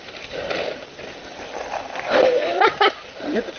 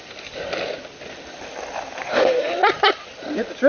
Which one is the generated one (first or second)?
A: first